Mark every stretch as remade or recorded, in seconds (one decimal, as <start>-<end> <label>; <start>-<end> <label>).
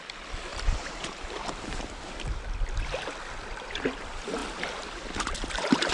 0.0-0.5 recorded; 0.5-1.5 remade; 1.5-5.9 recorded